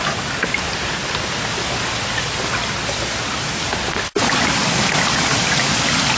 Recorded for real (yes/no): yes